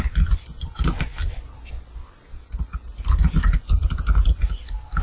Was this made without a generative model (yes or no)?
yes